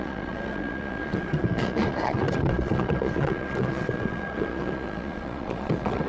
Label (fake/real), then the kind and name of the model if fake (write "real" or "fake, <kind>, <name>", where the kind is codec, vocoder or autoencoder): fake, vocoder, Vocos